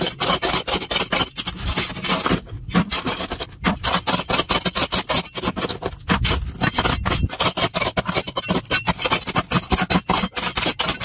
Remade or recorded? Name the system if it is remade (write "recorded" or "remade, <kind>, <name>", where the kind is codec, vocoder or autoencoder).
recorded